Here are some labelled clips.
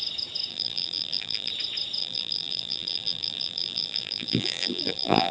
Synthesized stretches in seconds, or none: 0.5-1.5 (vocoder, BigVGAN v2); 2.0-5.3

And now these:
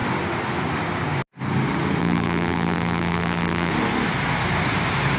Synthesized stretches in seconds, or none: 2.0-3.7 (vocoder, BigVGAN v2)

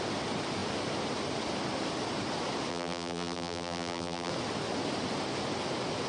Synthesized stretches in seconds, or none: 2.7-4.3 (vocoder, BigVGAN v2)